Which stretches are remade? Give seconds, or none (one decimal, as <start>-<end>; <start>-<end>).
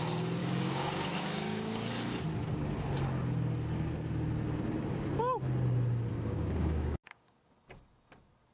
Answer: 0.4-1.9; 6.1-7.4